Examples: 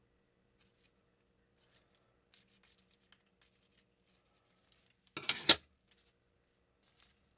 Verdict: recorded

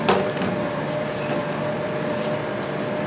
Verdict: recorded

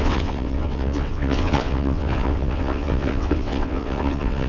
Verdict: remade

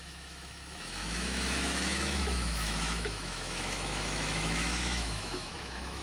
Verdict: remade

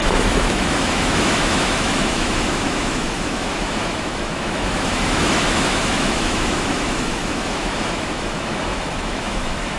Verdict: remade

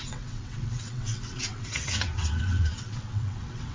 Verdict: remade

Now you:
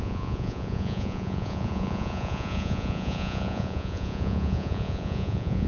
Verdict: remade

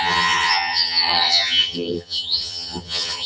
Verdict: remade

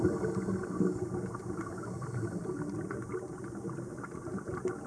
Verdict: recorded